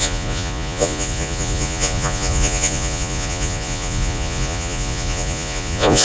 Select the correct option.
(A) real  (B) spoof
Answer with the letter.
B